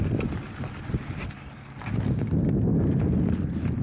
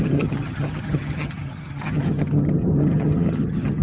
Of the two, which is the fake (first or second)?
second